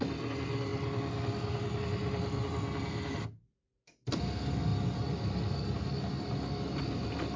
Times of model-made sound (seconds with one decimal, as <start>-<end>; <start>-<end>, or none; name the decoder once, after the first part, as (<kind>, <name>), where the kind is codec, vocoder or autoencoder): none